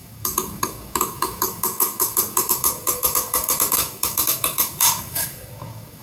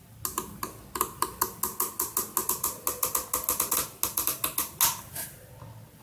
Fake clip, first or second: first